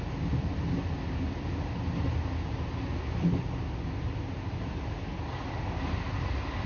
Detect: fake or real real